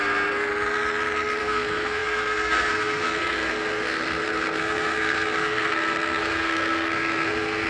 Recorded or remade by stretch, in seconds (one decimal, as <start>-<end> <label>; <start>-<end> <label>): 0.0-0.5 remade; 0.5-1.4 recorded; 1.4-7.7 remade